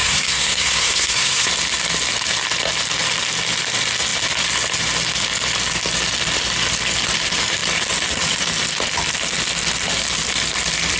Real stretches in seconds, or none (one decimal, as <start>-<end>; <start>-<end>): 1.5-11.0